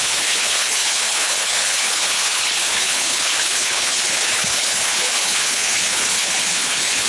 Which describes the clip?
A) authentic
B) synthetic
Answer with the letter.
B